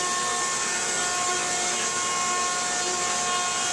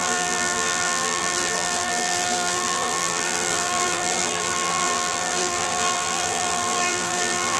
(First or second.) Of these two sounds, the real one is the first